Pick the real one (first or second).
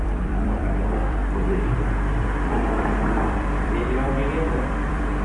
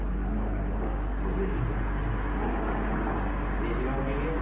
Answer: second